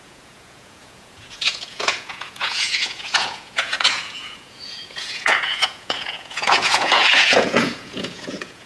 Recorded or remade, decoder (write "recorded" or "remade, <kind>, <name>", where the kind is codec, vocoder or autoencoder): remade, vocoder, Vocos